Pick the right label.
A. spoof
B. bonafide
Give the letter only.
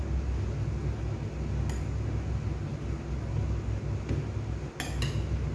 B